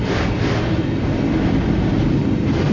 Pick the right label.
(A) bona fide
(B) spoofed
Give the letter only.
A